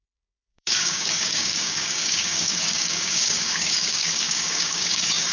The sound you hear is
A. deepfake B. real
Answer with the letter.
A